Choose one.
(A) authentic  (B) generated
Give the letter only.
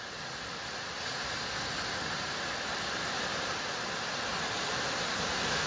A